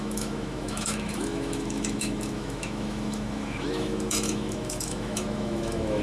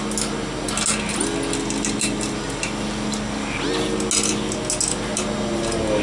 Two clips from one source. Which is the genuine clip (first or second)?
second